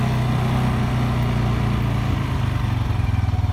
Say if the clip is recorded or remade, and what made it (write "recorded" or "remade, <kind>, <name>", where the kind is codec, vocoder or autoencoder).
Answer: recorded